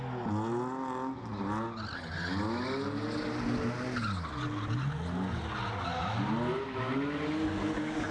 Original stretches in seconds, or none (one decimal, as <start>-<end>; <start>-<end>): 0.0-8.1